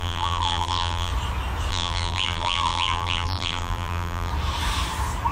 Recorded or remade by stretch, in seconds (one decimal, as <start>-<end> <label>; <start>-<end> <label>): 0.0-1.1 remade; 1.1-1.7 recorded; 1.7-4.3 remade; 4.3-5.3 recorded